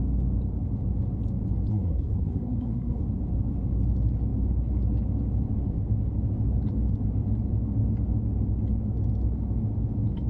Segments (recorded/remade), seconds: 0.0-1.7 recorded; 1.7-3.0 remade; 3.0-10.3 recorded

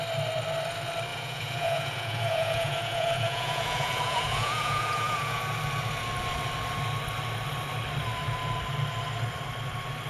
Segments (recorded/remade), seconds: 0.0-1.1 recorded; 1.1-5.4 remade; 5.4-10.1 recorded

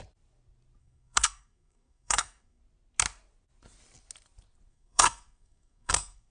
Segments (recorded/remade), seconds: 0.0-0.8 recorded; 0.8-2.6 remade; 2.6-4.7 recorded; 4.7-6.3 remade